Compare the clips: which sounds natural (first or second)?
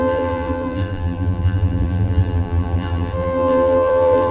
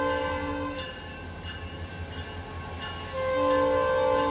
second